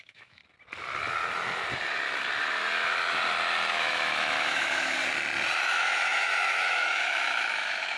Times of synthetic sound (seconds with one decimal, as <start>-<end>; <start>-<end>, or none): 0.0-0.4; 3.7-5.0; 5.6-8.0